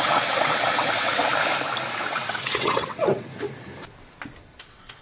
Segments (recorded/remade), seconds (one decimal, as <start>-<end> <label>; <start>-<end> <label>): 0.0-1.3 remade; 1.3-1.9 recorded; 1.9-3.3 remade; 3.3-4.6 recorded; 4.6-5.0 remade